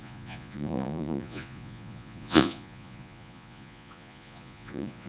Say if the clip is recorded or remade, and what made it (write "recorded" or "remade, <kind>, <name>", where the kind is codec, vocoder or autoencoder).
remade, vocoder, Vocos